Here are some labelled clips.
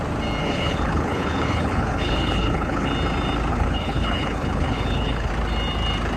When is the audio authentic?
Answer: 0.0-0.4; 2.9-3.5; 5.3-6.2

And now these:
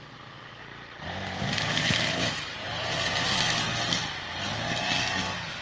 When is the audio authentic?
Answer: 0.0-0.6; 3.4-5.6

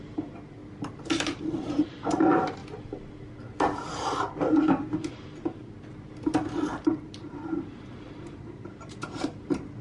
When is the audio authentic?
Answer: 2.6-5.8

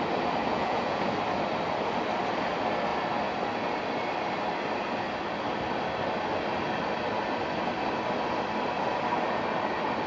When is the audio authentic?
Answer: 0.0-0.5; 1.1-10.1

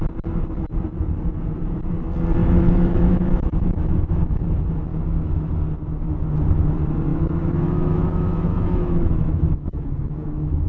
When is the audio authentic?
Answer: 0.0-2.4; 4.5-4.9; 5.5-7.1

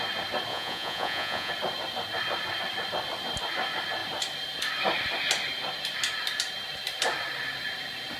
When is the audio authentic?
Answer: 0.0-0.5; 1.5-8.2

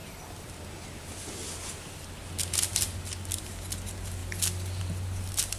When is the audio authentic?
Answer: 1.2-5.6